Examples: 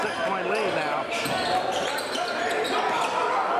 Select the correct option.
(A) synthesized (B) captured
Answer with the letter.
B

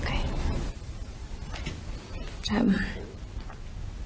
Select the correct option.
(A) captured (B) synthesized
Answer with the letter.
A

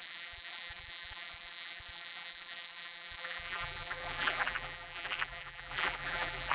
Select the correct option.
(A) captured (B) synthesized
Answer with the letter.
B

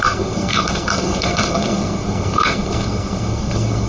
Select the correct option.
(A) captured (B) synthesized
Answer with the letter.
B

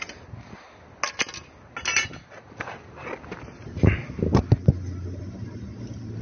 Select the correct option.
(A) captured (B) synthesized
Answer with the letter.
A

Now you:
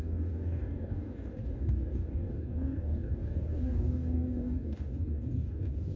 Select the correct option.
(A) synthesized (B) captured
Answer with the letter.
A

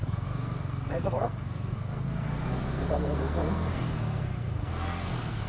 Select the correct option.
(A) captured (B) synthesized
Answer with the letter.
B